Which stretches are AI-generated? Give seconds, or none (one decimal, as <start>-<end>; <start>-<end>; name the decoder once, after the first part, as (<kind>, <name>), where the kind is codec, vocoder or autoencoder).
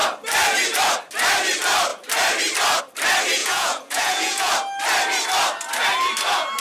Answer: 3.4-4.5 (vocoder, Vocos)